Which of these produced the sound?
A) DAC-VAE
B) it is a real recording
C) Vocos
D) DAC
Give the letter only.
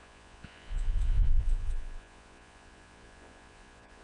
C